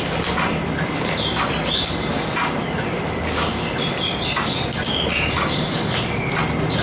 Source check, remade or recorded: recorded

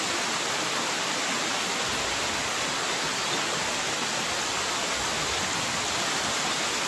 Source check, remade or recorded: recorded